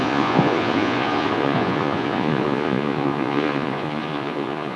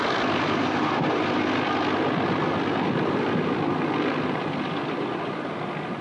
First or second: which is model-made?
first